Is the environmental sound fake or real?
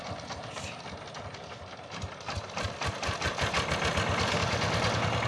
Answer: real